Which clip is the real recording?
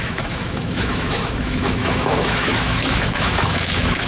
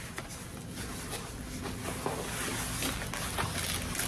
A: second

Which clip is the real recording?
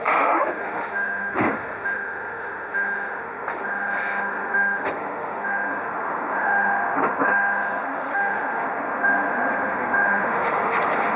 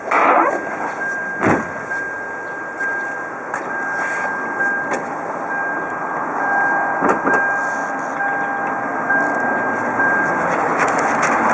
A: second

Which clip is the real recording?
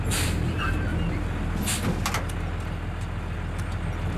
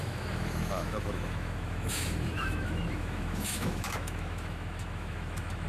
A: first